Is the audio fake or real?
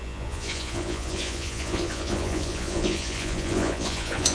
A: fake